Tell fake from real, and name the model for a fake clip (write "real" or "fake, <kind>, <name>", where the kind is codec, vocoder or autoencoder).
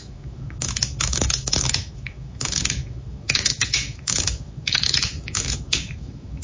fake, autoencoder, DAC-VAE